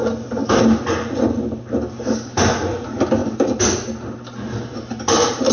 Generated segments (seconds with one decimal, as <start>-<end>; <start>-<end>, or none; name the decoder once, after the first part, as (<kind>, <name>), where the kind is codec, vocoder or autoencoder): none